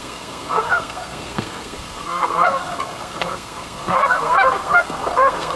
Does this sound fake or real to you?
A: fake